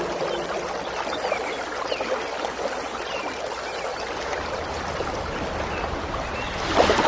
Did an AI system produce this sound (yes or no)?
no